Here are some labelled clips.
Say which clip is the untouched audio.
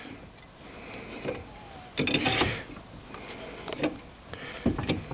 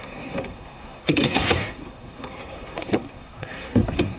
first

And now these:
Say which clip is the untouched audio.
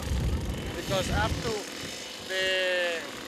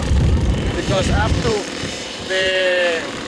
first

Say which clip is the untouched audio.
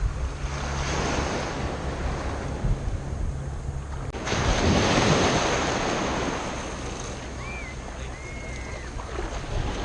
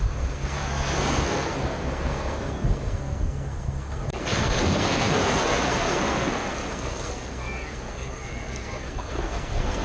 first